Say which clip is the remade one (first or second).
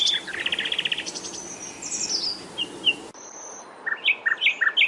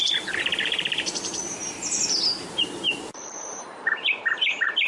second